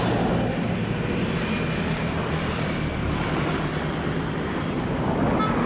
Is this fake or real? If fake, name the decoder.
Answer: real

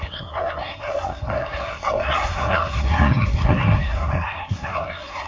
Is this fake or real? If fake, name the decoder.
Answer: fake, codec, SNAC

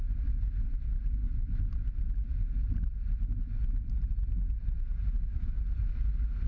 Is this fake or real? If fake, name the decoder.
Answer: real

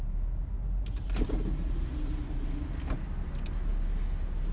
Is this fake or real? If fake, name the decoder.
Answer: real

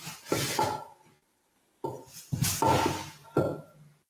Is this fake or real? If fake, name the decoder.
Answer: real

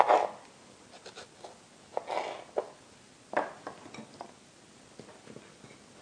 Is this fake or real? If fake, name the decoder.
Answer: real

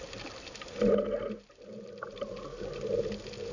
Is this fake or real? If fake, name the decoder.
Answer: real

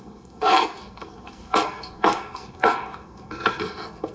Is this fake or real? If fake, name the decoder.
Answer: fake, codec, SNAC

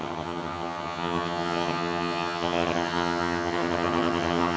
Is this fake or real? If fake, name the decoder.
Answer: fake, vocoder, HiFi-GAN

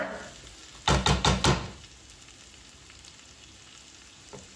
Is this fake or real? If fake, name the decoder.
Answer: real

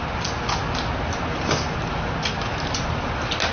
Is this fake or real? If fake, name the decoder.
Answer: real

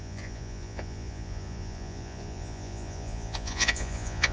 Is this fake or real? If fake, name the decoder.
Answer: fake, vocoder, Vocos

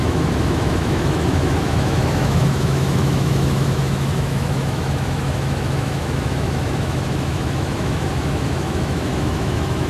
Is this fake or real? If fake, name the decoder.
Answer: fake, autoencoder, DAC-VAE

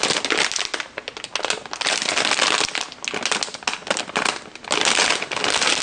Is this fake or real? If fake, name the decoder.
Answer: real